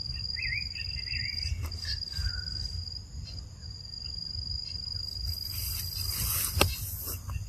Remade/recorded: recorded